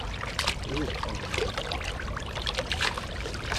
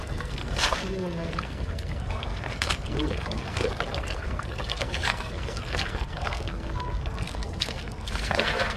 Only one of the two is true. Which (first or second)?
first